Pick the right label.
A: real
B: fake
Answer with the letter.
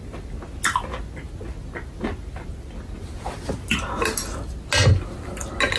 A